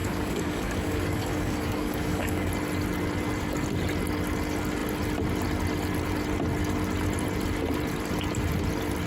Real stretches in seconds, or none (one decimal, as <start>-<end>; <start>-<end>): 2.5-9.1